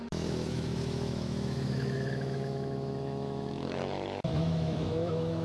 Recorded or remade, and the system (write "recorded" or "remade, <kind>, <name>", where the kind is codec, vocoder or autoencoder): remade, autoencoder, DAC-VAE